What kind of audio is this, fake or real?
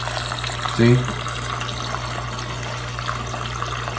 real